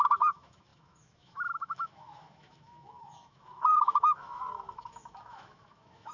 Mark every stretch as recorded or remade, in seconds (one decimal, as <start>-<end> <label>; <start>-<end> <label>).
0.0-6.1 remade